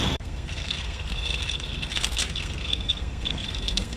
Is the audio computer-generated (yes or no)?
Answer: yes